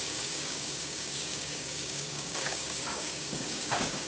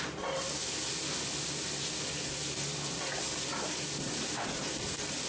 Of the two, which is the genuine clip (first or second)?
second